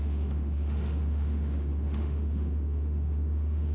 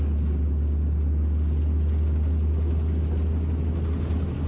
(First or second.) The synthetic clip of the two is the first